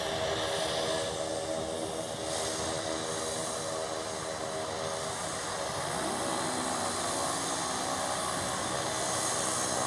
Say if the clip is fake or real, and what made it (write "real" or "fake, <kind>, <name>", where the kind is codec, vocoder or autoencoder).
real